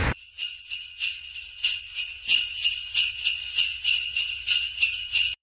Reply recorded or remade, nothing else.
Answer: remade